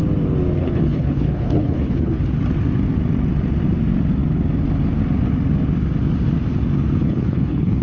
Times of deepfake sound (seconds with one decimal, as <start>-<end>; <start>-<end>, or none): 0.6-2.2; 7.0-7.8